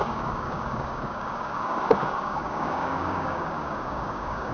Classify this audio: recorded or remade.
remade